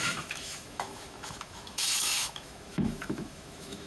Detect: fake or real fake